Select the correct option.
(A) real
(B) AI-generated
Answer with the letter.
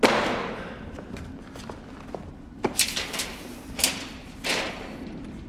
A